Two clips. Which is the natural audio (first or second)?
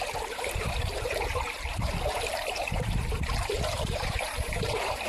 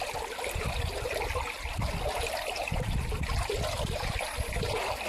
second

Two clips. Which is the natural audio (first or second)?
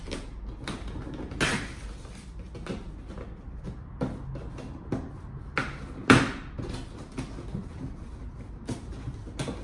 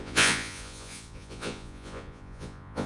first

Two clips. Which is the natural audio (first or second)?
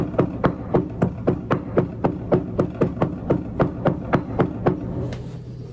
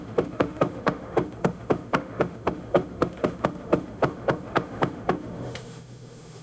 first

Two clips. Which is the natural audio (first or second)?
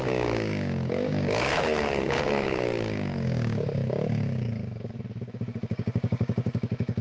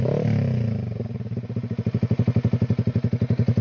second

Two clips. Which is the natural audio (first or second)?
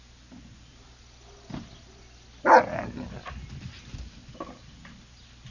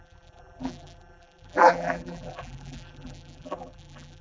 first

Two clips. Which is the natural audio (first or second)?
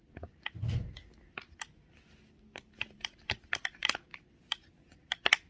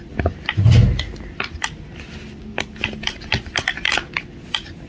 second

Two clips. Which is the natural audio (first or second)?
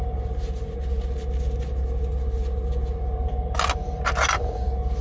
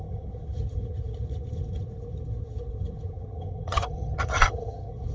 first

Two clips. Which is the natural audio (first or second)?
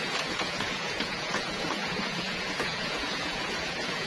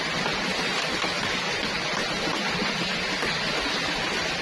second